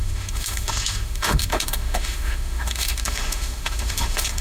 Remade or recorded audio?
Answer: remade